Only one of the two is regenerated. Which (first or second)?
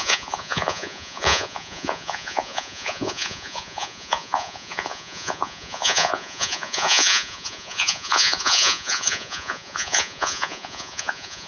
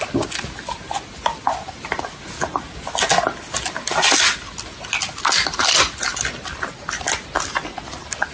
first